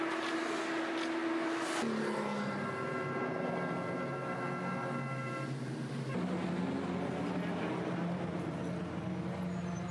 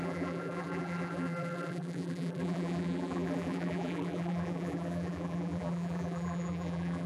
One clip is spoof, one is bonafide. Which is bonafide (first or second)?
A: first